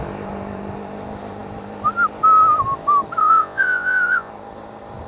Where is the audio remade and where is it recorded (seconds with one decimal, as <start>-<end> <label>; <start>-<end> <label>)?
0.0-3.2 recorded; 3.2-4.3 remade; 4.3-5.1 recorded